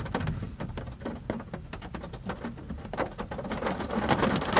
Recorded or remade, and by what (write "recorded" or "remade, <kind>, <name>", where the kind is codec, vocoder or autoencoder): recorded